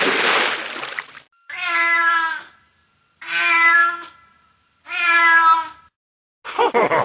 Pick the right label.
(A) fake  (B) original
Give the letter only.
B